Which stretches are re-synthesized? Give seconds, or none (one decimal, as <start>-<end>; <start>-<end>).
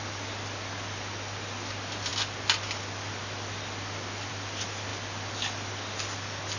none